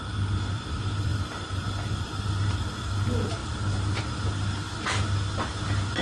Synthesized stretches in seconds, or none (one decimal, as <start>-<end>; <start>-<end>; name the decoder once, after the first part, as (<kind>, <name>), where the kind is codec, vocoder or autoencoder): 1.1-2.8 (vocoder, BigVGAN v2)

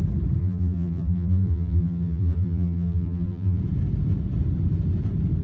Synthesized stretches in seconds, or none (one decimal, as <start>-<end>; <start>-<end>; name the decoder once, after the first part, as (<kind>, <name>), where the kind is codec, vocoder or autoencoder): 0.4-3.6 (vocoder, BigVGAN v2)

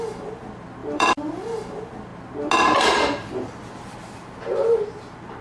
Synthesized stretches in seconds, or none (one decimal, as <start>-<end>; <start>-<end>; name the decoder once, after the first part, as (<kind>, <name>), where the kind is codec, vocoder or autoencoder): 0.8-1.3 (vocoder, BigVGAN v2)

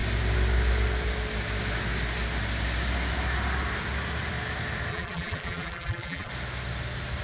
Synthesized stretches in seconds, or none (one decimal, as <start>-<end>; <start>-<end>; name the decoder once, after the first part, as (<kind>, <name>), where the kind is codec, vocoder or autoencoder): 4.9-6.3 (vocoder, BigVGAN v2)

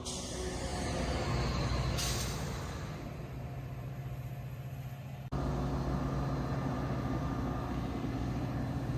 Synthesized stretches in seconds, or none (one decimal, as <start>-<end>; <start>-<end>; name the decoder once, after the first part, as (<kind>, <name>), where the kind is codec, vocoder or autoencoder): none